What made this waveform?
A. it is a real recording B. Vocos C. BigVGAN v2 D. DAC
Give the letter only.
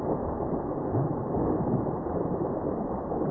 A